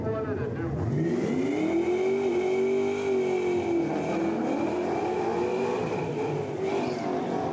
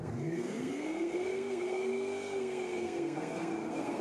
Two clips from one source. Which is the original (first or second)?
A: first